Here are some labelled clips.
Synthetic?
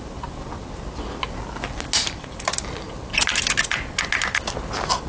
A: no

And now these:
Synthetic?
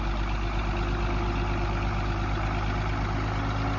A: no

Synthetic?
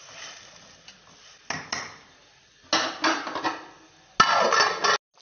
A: no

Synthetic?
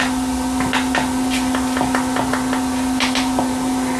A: no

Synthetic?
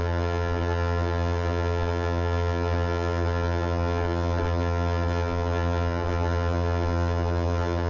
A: yes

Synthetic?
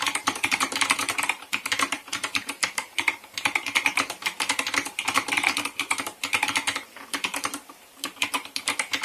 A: yes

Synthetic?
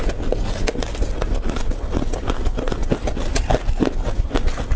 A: no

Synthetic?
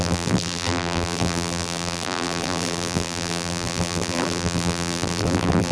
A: yes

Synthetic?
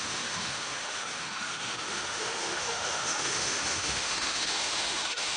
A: yes